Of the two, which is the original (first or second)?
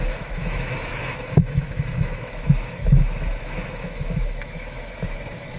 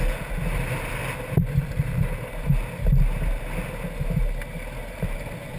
second